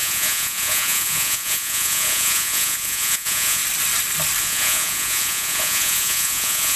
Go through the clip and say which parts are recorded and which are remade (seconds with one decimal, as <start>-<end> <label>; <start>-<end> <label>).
0.0-3.6 remade; 3.6-4.4 recorded; 4.4-6.8 remade